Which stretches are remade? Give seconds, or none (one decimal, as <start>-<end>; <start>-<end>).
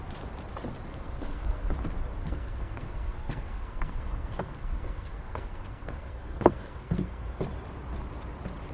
0.9-1.7; 2.2-7.4